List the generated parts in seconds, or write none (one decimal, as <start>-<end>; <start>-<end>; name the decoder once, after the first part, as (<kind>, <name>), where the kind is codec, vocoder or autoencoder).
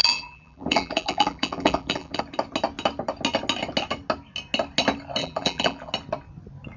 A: 0.0-2.2 (vocoder, BigVGAN v2); 5.2-5.9